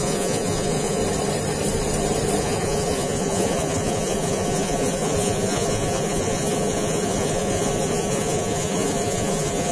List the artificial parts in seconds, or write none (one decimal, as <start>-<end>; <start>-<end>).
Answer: 0.0-1.0; 2.4-9.7